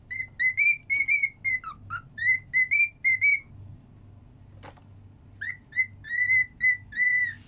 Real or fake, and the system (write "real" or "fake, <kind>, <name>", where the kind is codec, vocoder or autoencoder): real